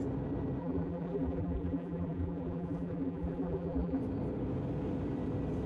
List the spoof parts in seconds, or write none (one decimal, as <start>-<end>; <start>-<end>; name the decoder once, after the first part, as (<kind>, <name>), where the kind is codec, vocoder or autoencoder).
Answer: 0.6-4.0 (vocoder, BigVGAN v2)